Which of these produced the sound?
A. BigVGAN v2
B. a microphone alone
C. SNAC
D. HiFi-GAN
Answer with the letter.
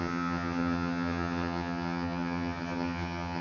D